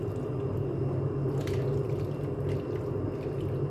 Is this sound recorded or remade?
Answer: recorded